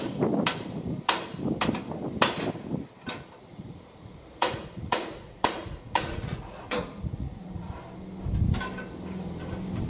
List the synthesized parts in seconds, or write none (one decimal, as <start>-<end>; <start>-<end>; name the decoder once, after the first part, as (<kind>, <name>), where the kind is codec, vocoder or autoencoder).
3.5-7.7 (vocoder, Vocos)